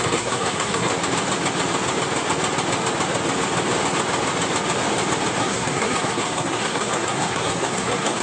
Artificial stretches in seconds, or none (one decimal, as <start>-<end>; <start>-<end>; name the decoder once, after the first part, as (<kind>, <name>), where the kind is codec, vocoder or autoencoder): 0.0-0.9 (codec, SNAC); 5.4-8.2